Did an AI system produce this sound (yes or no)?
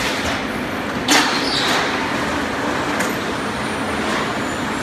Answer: no